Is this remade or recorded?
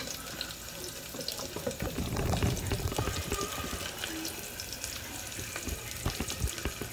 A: recorded